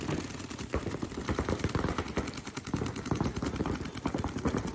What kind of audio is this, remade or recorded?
remade